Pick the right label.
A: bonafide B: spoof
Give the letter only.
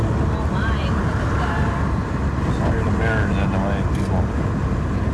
A